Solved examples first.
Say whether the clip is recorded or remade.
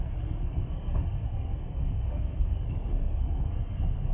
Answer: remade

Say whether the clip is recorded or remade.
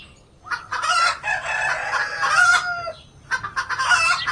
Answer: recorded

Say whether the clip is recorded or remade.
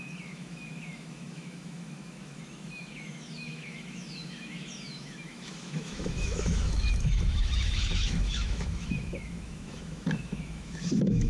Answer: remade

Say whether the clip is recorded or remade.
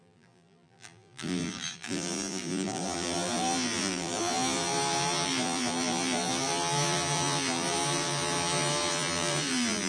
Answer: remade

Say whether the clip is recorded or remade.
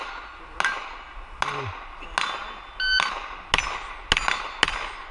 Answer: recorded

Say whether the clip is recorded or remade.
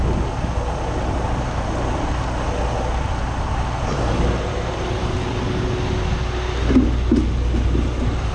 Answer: recorded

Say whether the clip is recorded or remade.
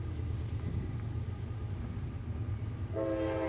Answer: recorded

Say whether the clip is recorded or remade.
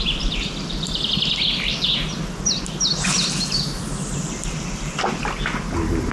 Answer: recorded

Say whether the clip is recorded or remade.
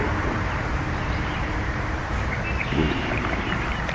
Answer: remade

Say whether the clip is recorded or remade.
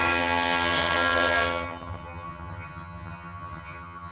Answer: remade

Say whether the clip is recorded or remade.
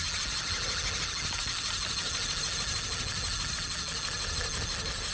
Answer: recorded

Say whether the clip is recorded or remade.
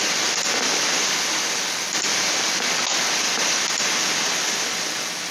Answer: recorded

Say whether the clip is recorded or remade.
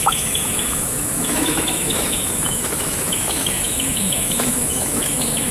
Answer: remade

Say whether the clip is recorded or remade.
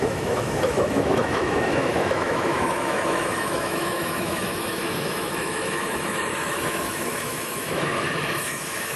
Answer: remade